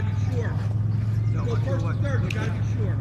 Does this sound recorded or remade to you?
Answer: recorded